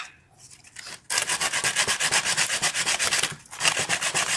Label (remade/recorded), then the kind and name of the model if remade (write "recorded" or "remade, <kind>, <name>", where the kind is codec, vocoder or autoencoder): recorded